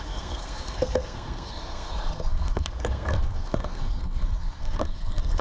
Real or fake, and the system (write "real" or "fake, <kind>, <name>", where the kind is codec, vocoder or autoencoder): fake, codec, SNAC